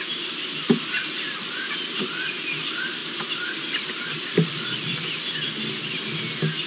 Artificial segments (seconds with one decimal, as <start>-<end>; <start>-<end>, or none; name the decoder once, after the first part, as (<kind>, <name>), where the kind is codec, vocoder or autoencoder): 3.0-6.0 (vocoder, BigVGAN v2)